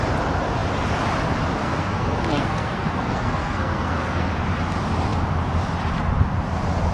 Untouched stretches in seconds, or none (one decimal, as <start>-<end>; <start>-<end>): 0.0-1.6; 4.3-6.9